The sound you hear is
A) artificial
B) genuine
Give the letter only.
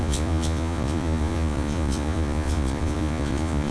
A